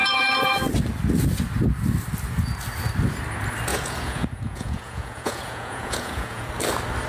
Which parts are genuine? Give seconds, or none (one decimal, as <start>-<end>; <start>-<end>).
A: 0.5-3.7; 6.5-7.1

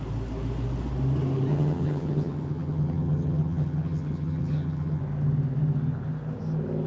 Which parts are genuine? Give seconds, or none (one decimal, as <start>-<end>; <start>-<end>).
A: 0.0-1.5; 5.0-6.9

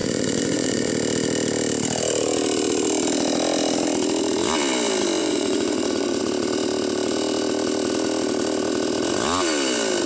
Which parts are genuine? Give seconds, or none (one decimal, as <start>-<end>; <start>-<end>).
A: 0.9-5.2; 6.2-10.1